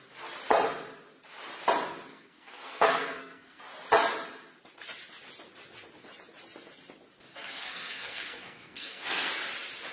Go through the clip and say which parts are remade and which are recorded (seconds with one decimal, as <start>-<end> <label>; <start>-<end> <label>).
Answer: 0.0-2.1 recorded; 2.1-3.6 remade; 3.6-7.3 recorded; 7.3-9.3 remade; 9.3-9.9 recorded